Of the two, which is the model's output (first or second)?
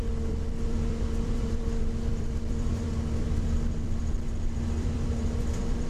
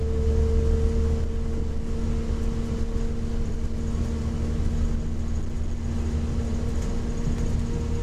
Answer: first